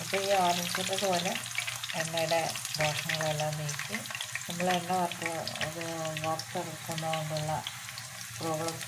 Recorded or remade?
recorded